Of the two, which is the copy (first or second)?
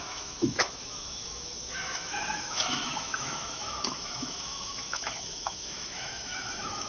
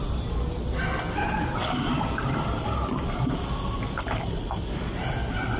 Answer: first